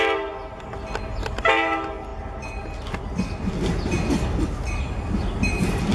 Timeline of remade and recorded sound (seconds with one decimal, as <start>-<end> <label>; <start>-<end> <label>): 0.0-5.9 recorded

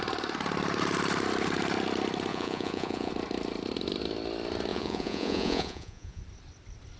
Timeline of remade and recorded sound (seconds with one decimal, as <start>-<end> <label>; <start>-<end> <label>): 0.0-2.3 recorded; 2.3-3.1 remade; 3.1-4.7 recorded; 4.7-6.2 remade; 6.2-7.0 recorded